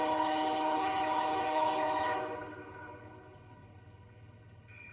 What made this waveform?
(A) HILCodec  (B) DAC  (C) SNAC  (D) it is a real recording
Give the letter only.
A